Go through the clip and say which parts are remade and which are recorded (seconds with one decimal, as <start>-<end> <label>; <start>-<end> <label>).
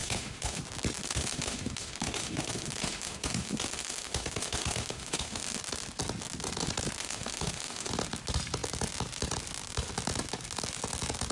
0.0-0.6 remade; 0.6-1.0 recorded; 1.0-5.6 remade; 5.6-7.0 recorded; 7.0-7.9 remade; 7.9-11.3 recorded